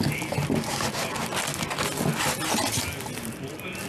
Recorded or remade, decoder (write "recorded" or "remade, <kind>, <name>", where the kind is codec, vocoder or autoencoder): recorded